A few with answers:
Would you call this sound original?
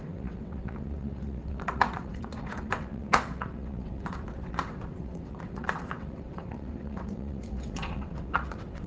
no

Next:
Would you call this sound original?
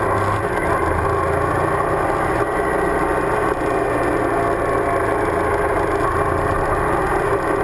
yes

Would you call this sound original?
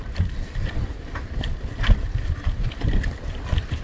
yes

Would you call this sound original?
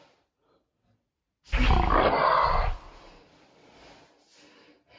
yes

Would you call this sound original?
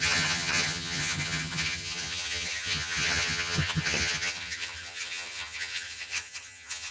no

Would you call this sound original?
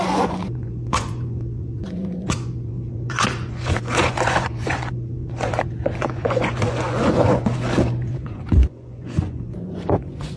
no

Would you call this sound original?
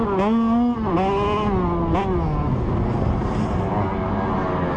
yes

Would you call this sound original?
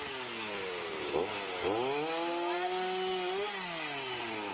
yes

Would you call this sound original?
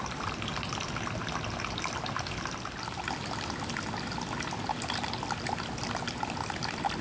yes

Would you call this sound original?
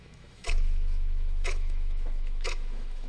no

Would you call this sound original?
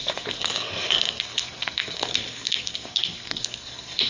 no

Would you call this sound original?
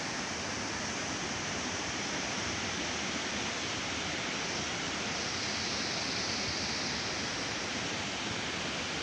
yes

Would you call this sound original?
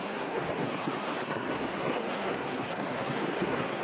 no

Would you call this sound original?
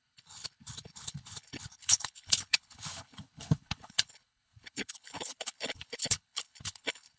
no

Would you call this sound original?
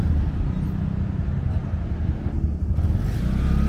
yes